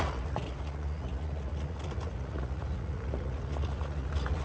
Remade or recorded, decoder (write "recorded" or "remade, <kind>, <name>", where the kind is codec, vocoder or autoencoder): remade, vocoder, Vocos